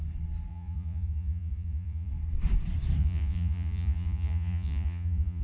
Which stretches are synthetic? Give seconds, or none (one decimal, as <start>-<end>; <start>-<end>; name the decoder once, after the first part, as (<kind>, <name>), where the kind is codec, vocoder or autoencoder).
0.5-2.1 (vocoder, Vocos); 3.0-5.4